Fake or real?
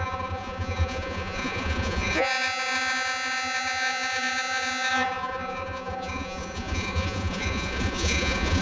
fake